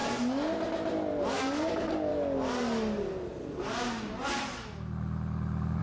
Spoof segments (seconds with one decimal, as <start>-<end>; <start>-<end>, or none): 1.3-2.1